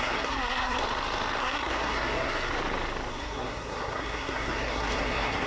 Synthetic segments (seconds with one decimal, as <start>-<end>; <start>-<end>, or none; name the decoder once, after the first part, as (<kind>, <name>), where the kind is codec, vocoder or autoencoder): 0.0-0.8 (codec, SNAC); 1.4-2.5; 3.1-5.5